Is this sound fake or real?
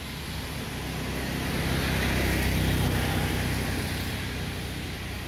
real